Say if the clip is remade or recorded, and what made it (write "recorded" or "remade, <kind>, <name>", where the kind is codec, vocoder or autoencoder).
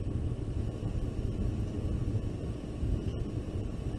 recorded